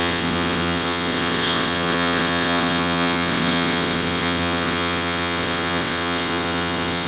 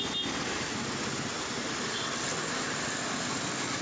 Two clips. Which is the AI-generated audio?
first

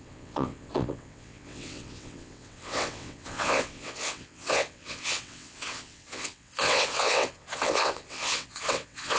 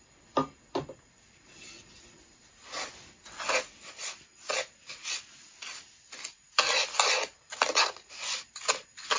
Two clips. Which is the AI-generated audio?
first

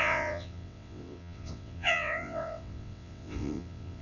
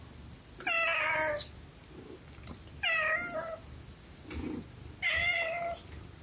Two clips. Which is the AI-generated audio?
first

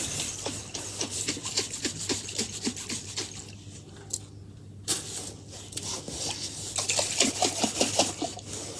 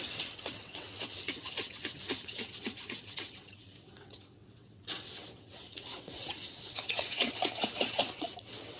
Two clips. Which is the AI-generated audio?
second